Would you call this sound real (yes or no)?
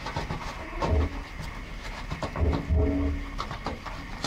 yes